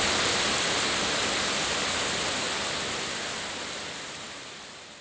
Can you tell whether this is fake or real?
real